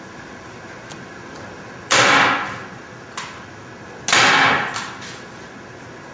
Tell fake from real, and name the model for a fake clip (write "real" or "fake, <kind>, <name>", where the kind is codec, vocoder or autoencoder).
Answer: real